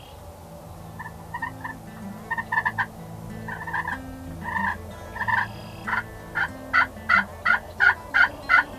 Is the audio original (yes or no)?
yes